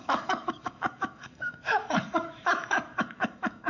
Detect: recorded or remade remade